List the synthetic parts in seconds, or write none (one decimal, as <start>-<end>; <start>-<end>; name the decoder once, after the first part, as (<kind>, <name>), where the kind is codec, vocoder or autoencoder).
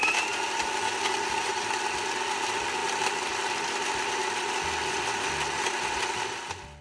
none